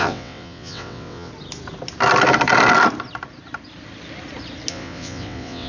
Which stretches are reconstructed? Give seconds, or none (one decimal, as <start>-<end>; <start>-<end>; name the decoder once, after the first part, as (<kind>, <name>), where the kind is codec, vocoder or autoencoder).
0.0-1.3 (vocoder, WaveNeXt); 4.7-5.7